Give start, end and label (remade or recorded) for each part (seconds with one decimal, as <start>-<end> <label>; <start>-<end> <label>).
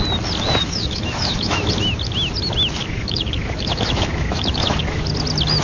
0.0-0.6 recorded; 0.6-1.7 remade; 1.7-2.8 recorded; 2.8-5.0 remade; 5.0-5.6 recorded